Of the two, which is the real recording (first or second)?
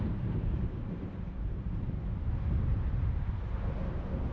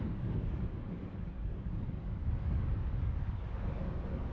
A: first